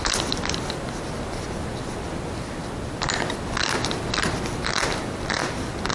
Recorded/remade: recorded